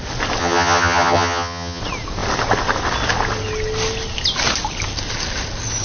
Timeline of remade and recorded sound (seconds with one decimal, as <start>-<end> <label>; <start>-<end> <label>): 0.0-0.4 recorded; 0.4-1.8 remade; 1.8-5.8 recorded